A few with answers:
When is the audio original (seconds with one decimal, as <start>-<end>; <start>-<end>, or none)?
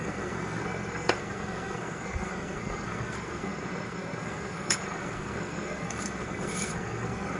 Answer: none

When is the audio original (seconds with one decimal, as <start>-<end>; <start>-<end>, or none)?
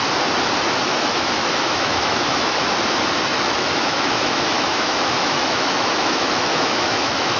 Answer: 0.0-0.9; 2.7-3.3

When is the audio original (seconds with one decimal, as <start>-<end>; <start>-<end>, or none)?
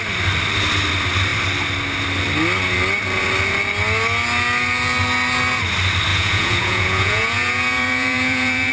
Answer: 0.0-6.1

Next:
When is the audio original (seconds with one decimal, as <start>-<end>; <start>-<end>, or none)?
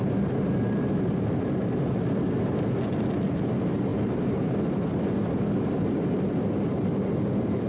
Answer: 0.0-7.7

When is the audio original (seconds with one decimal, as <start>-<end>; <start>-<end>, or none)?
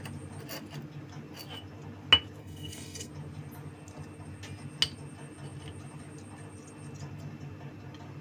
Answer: 0.0-2.4; 3.1-8.2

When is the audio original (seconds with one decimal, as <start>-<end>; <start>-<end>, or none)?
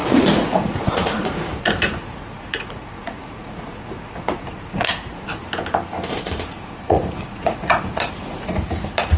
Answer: 5.4-6.1